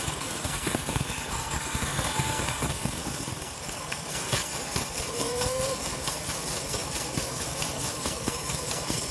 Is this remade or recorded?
remade